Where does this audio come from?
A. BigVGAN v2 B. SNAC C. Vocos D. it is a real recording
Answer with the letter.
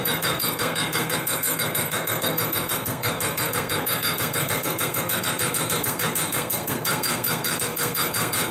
B